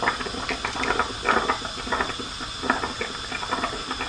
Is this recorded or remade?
recorded